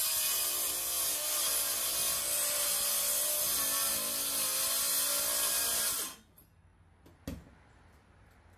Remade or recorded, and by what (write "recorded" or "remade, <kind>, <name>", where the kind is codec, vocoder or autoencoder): recorded